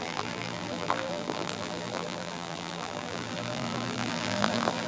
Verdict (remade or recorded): remade